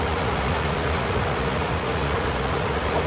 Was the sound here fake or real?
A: fake